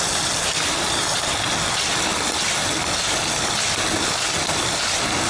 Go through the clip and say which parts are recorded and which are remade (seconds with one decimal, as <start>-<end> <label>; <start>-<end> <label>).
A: 0.0-5.3 recorded